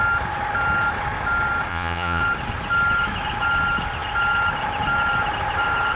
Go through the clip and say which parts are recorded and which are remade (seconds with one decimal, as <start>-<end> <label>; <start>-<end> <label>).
0.0-1.7 recorded; 1.7-2.2 remade; 2.2-6.0 recorded